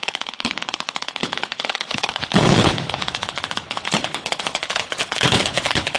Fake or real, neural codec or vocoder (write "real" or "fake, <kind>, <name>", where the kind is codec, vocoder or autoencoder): fake, codec, HILCodec